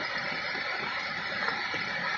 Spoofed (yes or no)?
no